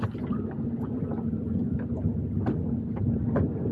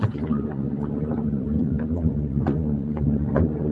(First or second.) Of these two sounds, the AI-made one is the second